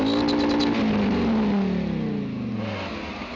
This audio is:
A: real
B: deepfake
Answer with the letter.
A